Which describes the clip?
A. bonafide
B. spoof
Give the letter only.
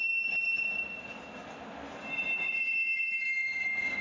A